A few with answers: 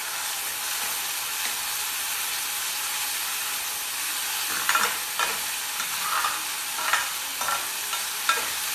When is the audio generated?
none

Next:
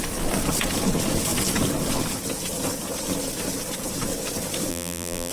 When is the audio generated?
4.7-5.3 (vocoder, BigVGAN v2)

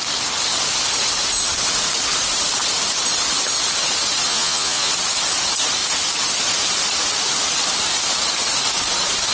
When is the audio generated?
4.3-4.9 (vocoder, Vocos)

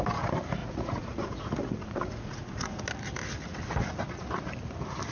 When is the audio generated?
0.6-2.8 (vocoder, Vocos)

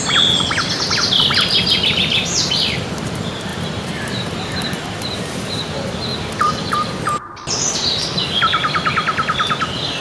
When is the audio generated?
none

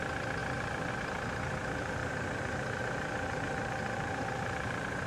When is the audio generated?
2.0-5.1 (vocoder, BigVGAN v2)

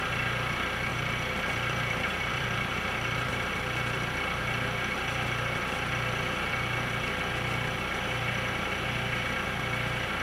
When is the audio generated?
0.9-3.3 (vocoder, BigVGAN v2)